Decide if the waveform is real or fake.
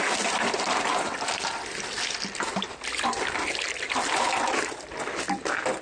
real